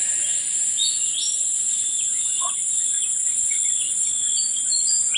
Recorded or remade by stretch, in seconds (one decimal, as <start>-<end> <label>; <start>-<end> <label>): 0.0-5.2 recorded